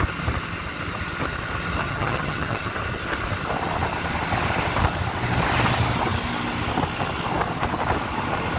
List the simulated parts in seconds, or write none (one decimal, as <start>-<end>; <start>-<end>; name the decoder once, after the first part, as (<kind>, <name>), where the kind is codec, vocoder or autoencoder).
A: 1.8-2.7 (vocoder, HiFi-GAN)